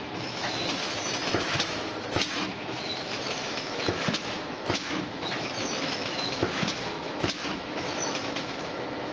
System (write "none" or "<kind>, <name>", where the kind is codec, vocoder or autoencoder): autoencoder, DAC-VAE